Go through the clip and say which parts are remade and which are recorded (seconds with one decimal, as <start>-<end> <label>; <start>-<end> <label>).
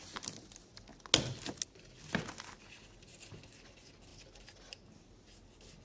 0.0-5.8 recorded